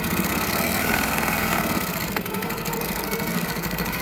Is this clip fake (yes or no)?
yes